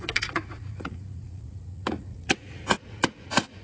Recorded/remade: remade